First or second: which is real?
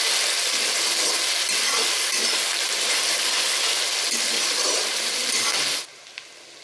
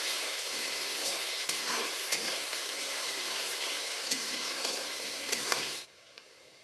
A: first